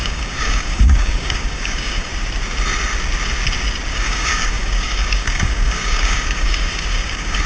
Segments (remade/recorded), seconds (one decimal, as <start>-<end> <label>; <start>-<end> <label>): 0.0-2.1 remade; 2.1-3.9 recorded; 3.9-7.5 remade